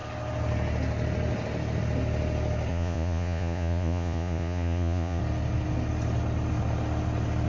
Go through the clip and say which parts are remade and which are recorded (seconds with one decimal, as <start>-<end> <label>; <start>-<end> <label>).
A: 0.0-2.7 recorded; 2.7-5.2 remade; 5.2-7.5 recorded